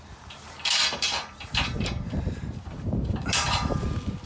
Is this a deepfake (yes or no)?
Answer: yes